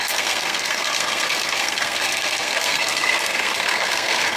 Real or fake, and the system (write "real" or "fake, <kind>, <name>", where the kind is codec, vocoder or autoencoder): fake, codec, SNAC